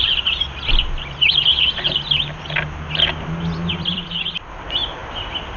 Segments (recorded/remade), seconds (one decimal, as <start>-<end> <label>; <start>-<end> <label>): 0.0-1.5 remade; 1.5-3.7 recorded; 3.7-5.0 remade; 5.0-5.6 recorded